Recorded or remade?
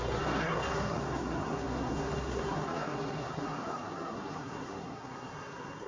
remade